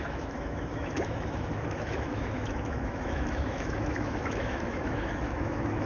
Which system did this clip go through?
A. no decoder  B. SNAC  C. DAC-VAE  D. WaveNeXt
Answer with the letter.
C